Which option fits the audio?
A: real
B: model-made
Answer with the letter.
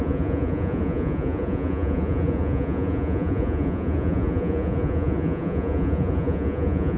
B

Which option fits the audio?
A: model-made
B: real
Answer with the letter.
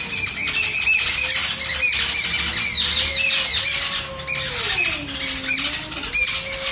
B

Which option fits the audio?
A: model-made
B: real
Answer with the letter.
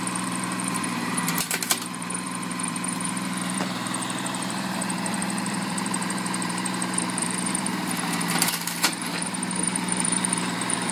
A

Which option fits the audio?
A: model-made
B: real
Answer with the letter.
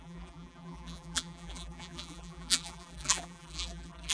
A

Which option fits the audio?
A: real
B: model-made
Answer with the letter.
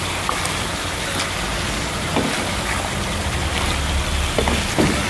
A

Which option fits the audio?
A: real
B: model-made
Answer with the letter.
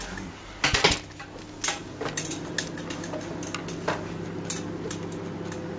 A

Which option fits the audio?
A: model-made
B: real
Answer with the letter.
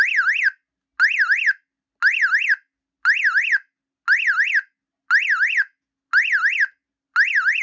B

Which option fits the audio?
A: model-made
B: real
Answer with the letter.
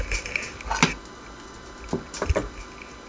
B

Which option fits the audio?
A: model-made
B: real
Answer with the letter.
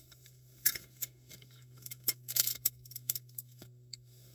A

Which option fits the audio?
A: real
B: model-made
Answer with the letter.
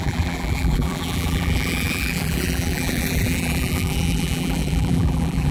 B